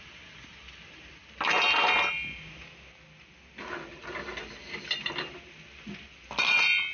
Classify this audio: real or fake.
real